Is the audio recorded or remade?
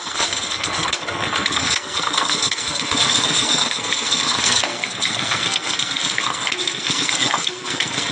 remade